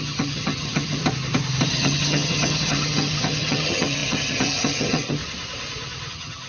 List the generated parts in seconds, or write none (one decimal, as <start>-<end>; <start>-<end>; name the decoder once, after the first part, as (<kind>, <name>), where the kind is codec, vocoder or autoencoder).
0.0-1.0 (vocoder, HiFi-GAN); 1.7-5.2; 6.1-6.5